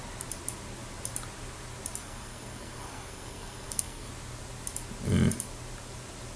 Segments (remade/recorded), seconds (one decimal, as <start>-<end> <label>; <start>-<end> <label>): 0.0-2.0 recorded; 2.0-4.1 remade; 4.1-6.4 recorded